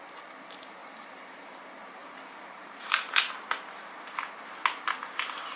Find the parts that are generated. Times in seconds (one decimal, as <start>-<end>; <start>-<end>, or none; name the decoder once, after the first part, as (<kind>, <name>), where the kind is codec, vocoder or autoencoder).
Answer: 0.8-1.6 (vocoder, BigVGAN v2); 2.0-3.2